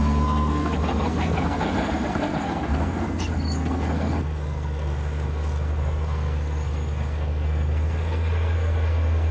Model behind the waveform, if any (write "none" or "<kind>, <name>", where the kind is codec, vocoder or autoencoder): codec, SNAC